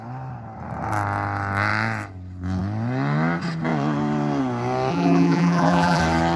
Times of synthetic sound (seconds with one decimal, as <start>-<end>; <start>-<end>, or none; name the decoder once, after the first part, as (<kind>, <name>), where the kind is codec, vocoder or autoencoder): 4.9-6.0 (vocoder, BigVGAN v2)